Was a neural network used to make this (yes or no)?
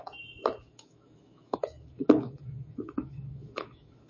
yes